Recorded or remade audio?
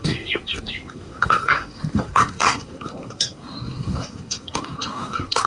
remade